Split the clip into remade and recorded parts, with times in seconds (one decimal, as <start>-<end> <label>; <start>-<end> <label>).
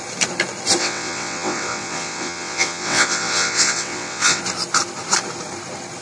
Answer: 0.0-0.8 recorded; 0.8-4.4 remade; 4.4-6.0 recorded